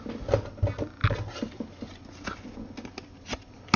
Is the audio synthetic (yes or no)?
no